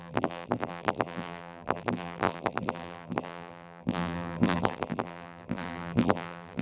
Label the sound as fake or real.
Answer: fake